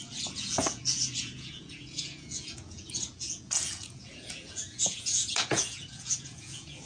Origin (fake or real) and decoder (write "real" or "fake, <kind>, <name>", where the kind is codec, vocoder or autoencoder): fake, vocoder, Vocos